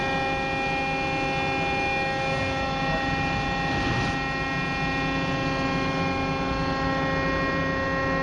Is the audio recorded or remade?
recorded